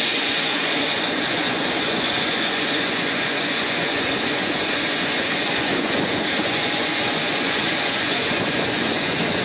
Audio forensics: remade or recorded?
remade